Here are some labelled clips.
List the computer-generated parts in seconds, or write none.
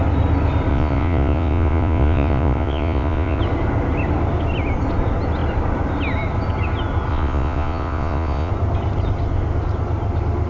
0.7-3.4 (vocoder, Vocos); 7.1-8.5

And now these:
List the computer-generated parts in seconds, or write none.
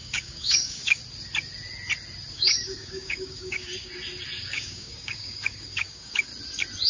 0.0-1.0 (codec, DAC); 2.3-3.7; 4.4-6.3